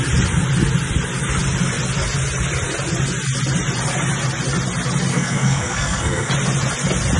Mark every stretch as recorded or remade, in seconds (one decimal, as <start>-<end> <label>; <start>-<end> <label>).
0.0-5.1 recorded; 5.1-6.3 remade; 6.3-7.2 recorded